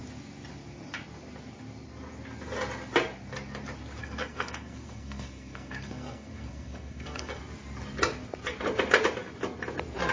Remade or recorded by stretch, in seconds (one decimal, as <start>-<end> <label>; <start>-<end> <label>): 0.0-4.0 recorded; 4.0-7.4 remade; 7.4-10.1 recorded